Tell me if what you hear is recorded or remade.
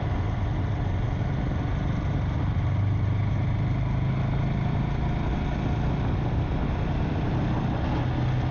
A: recorded